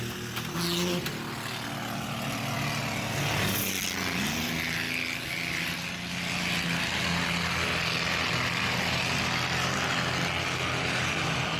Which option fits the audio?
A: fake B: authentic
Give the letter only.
B